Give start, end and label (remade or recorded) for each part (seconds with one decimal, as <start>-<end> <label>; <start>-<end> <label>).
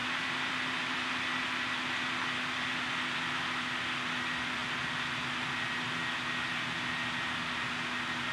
0.0-1.1 remade; 1.1-8.3 recorded